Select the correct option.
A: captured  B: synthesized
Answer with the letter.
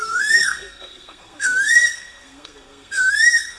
B